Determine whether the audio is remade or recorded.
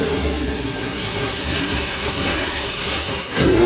remade